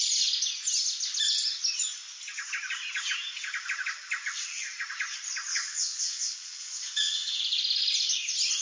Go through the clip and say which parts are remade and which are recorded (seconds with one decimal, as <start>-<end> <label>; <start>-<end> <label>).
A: 0.0-5.5 recorded; 5.5-7.4 remade; 7.4-8.6 recorded